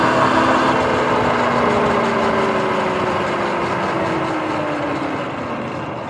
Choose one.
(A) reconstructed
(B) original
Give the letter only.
B